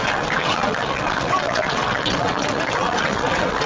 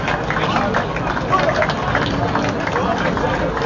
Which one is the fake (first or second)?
first